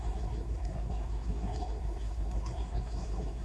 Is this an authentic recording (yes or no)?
no